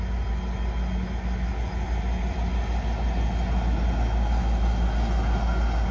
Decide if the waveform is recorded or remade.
recorded